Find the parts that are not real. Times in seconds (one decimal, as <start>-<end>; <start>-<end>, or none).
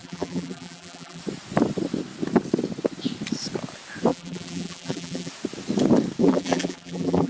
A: 0.0-1.2; 4.1-5.3; 6.2-7.3